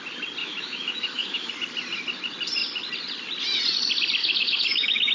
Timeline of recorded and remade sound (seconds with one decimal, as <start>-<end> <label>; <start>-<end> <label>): 0.0-0.4 recorded; 0.4-1.5 remade; 1.5-4.2 recorded; 4.2-5.1 remade